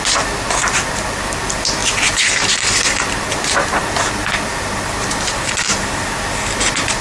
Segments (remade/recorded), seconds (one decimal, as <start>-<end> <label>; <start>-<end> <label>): 0.0-7.0 recorded